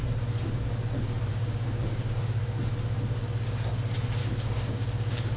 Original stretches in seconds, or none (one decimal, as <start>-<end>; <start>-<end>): 0.0-1.3; 2.6-4.2